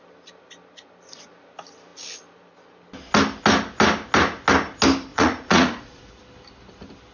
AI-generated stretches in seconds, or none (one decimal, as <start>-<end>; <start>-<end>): 5.1-6.0